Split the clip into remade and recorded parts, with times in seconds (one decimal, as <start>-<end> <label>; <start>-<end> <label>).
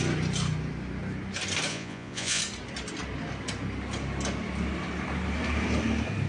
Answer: 0.0-1.7 recorded; 1.7-2.4 remade; 2.4-6.3 recorded